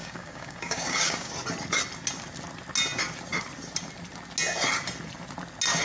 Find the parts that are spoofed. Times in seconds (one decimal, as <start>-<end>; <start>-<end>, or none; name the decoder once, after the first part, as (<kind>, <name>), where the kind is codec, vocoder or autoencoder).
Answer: 0.0-1.3 (codec, DAC)